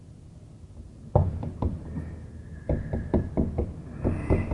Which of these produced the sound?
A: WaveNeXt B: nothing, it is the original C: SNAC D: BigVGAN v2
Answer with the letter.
B